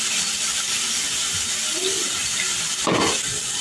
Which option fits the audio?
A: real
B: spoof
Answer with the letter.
A